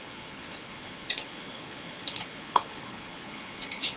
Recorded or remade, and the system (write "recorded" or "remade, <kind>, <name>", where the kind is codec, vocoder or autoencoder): remade, codec, HILCodec